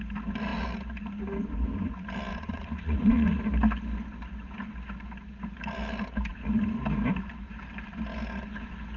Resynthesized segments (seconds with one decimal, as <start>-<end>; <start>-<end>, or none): 2.3-3.4